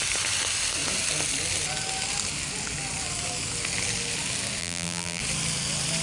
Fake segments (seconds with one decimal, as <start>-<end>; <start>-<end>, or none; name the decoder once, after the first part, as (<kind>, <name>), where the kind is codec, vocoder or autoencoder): 4.6-5.2 (vocoder, BigVGAN v2)